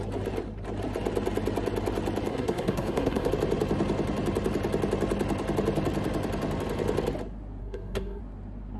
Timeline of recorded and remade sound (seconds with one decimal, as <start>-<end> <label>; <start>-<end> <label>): 0.0-2.3 recorded; 2.3-3.3 remade; 3.3-7.6 recorded; 7.6-8.2 remade; 8.2-8.8 recorded